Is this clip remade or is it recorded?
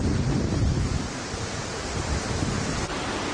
remade